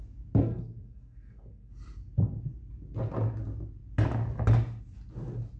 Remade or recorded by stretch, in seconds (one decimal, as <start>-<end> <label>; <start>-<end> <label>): 0.0-0.4 recorded; 0.4-1.7 remade; 1.7-5.6 recorded